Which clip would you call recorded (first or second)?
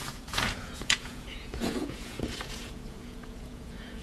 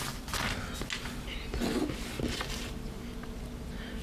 second